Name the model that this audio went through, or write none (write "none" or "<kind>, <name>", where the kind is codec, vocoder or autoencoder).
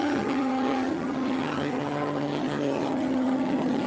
vocoder, HiFi-GAN